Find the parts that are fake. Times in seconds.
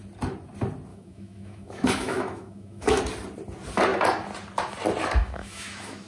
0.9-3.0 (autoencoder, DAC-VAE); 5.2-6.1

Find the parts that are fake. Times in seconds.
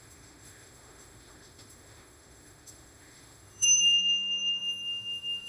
0.0-5.5 (autoencoder, DAC-VAE)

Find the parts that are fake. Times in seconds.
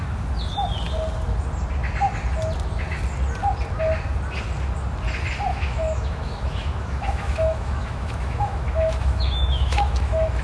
5.5-10.4 (autoencoder, DAC-VAE)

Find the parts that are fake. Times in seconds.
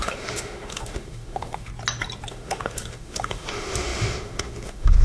0.0-1.7 (autoencoder, DAC-VAE); 2.3-5.0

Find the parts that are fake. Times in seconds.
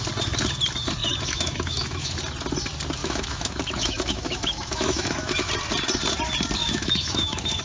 1.0-2.2 (autoencoder, DAC-VAE); 3.0-5.5; 6.6-7.6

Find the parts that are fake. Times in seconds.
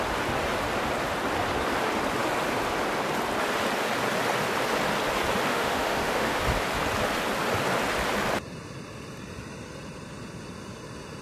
5.5-6.4 (autoencoder, DAC-VAE)